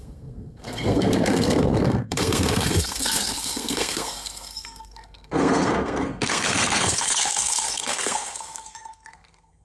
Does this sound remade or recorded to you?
remade